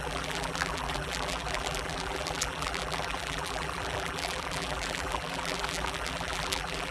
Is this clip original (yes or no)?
no